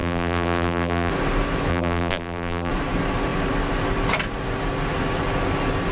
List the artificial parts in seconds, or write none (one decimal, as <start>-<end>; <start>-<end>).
0.0-1.1; 1.7-2.7